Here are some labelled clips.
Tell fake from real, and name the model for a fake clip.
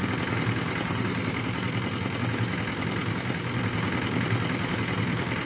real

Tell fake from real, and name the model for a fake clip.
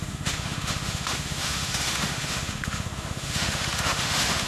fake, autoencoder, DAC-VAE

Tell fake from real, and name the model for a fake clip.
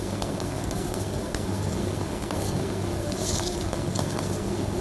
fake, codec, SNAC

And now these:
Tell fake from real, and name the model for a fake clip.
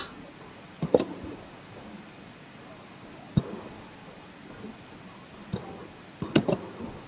real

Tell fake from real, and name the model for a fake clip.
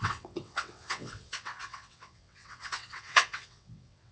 fake, vocoder, WaveNeXt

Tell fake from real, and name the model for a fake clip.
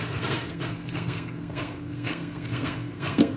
fake, codec, SNAC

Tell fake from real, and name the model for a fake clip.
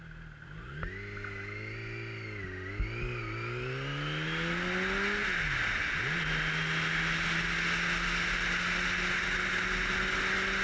real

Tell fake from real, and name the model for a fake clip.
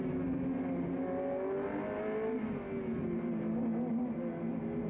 real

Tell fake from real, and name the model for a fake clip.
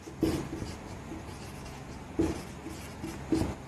real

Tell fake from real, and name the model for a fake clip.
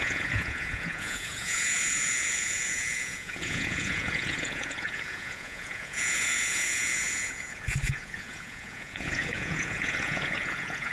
fake, vocoder, Vocos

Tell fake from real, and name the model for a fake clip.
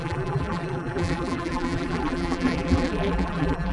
fake, vocoder, BigVGAN v2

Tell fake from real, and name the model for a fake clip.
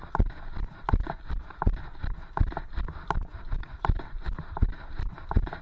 real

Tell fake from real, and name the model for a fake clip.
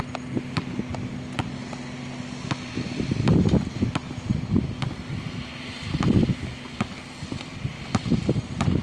real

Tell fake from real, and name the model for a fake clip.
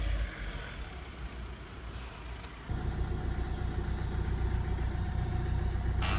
real